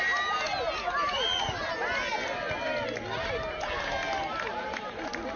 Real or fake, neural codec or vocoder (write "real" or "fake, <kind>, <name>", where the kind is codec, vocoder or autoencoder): real